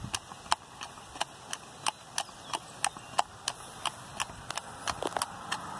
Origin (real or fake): real